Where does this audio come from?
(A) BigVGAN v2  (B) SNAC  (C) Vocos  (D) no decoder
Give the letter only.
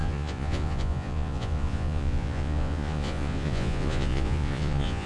C